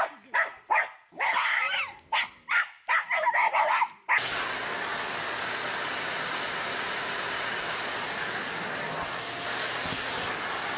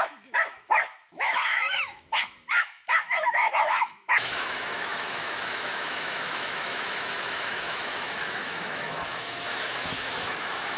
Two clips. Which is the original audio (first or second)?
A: first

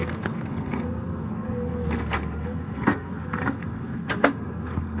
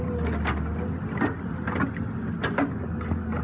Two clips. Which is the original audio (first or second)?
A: second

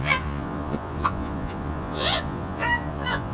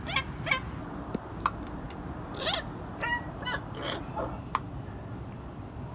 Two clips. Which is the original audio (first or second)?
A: second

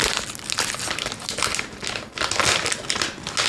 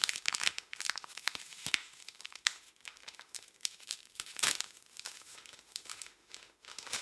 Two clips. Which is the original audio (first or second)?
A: first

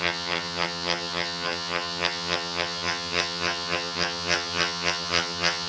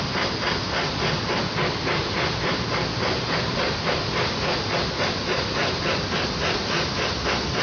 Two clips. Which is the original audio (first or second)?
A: second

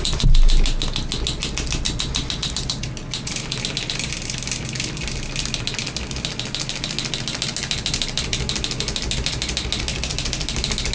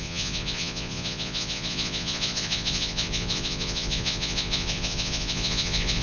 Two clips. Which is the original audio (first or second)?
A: first